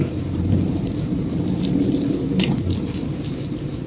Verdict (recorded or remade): remade